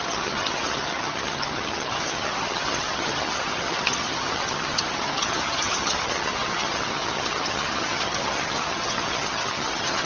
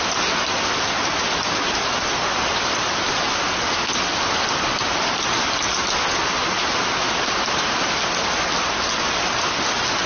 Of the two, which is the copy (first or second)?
first